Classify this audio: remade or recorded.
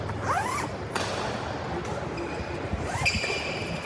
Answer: recorded